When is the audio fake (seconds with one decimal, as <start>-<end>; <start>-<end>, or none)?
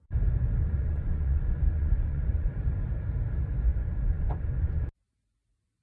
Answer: 0.6-2.5; 3.7-4.8